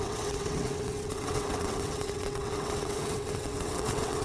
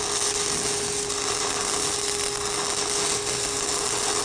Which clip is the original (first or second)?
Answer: second